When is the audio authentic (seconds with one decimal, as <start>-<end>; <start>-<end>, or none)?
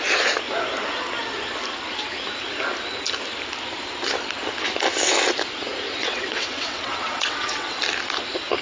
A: 0.0-6.0; 7.8-8.6